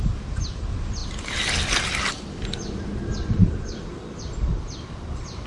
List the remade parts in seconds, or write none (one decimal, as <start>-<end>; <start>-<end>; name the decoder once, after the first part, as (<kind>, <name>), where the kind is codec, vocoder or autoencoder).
none

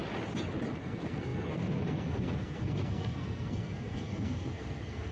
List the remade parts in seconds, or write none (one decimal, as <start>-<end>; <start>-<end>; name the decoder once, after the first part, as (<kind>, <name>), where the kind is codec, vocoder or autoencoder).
0.8-5.1 (codec, SNAC)

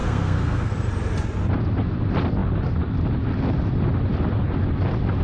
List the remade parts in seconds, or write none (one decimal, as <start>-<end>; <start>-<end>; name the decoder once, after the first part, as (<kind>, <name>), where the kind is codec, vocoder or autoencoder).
0.0-0.7 (codec, SNAC)

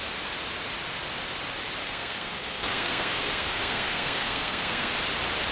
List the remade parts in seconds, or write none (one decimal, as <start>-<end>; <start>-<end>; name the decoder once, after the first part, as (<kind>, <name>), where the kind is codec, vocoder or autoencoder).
1.8-4.9 (codec, SNAC)

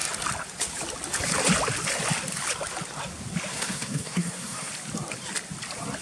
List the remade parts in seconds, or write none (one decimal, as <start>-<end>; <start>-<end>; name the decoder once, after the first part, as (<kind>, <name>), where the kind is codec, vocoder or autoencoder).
3.5-4.7 (codec, SNAC)

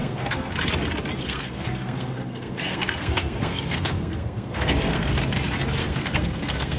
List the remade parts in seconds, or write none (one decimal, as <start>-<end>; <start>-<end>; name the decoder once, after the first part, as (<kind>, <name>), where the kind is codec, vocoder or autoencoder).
0.0-0.5 (codec, SNAC); 1.2-5.1; 5.8-6.8

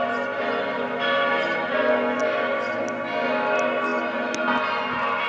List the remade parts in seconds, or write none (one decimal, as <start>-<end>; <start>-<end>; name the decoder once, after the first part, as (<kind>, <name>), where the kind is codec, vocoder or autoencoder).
none

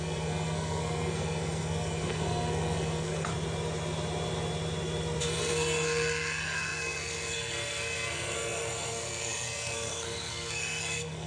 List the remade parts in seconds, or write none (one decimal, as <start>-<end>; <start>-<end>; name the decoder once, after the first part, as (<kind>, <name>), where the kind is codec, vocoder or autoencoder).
0.0-3.3 (codec, SNAC); 5.2-11.3